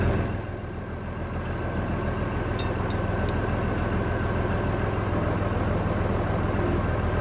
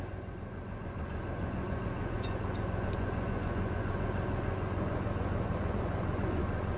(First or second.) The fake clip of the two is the second